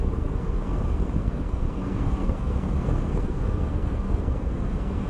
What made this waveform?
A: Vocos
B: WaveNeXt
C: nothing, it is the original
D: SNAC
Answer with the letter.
D